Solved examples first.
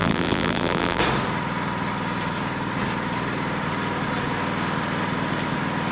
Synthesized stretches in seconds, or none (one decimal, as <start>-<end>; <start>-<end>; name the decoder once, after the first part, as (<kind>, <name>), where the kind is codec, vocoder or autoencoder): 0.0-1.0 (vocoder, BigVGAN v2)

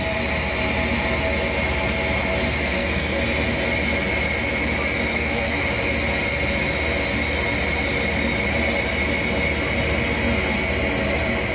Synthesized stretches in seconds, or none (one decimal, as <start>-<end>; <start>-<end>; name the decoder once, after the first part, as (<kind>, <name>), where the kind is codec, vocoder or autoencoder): 2.6-3.2 (codec, SNAC); 5.1-5.6

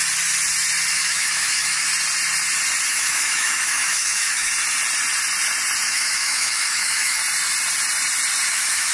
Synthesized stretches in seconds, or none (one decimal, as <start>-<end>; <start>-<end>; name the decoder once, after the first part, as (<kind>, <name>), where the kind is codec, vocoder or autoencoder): 0.9-1.9 (autoencoder, DAC-VAE); 2.9-4.5; 5.8-7.2; 8.5-8.9